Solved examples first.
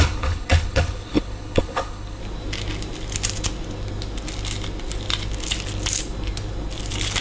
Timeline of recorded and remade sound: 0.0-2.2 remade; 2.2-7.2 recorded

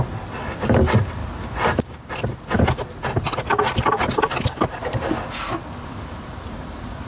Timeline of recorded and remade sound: 0.0-7.1 recorded

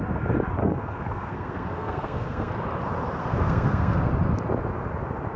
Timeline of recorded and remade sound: 0.0-0.6 recorded; 0.6-2.5 remade; 2.5-3.2 recorded; 3.2-4.1 remade; 4.1-5.4 recorded

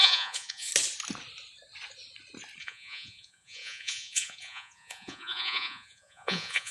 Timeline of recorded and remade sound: 0.0-0.7 remade; 0.7-2.6 recorded; 2.6-6.7 remade